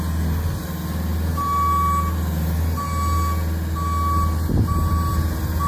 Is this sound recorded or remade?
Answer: recorded